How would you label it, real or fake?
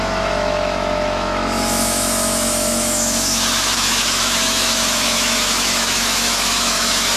fake